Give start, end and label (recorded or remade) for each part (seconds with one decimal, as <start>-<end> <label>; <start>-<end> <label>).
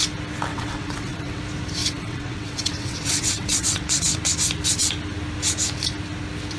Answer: 0.0-0.5 recorded; 0.5-1.4 remade; 1.4-1.8 recorded; 1.8-4.2 remade; 4.2-6.6 recorded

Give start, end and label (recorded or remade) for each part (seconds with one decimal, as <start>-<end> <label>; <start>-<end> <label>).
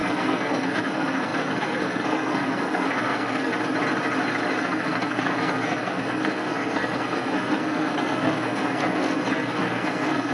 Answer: 0.0-3.5 remade; 3.5-4.6 recorded; 4.6-10.3 remade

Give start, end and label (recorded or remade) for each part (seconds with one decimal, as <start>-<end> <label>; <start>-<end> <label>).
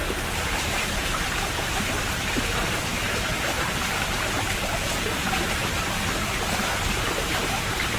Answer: 0.0-1.0 recorded; 1.0-2.9 remade; 2.9-4.6 recorded; 4.6-5.2 remade; 5.2-6.3 recorded; 6.3-8.0 remade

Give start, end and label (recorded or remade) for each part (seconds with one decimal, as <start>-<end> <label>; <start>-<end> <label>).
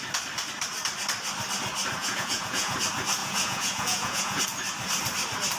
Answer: 0.0-2.0 recorded; 2.0-2.7 remade; 2.7-3.2 recorded; 3.2-4.4 remade; 4.4-5.6 recorded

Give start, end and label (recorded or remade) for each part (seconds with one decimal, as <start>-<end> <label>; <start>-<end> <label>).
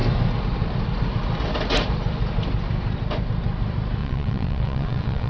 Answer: 0.0-4.0 recorded; 4.0-5.3 remade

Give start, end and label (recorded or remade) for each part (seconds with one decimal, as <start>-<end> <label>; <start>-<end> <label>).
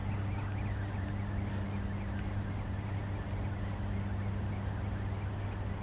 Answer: 0.0-5.8 recorded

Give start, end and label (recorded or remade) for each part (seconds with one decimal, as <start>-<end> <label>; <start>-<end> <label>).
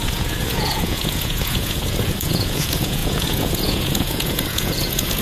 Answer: 0.0-5.2 remade